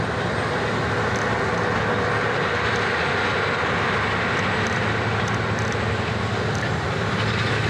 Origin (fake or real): real